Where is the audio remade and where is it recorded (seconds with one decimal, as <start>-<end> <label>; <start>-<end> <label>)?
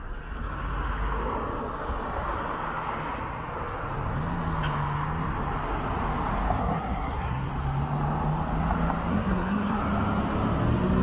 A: 0.0-6.6 recorded; 6.6-7.5 remade; 7.5-9.1 recorded; 9.1-9.8 remade; 9.8-11.0 recorded